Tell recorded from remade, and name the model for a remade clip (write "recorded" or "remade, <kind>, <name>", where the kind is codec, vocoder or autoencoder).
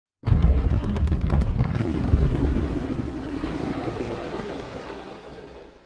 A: remade, codec, SNAC